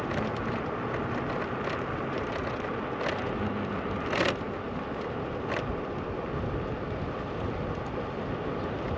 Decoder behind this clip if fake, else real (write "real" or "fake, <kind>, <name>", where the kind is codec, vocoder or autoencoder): real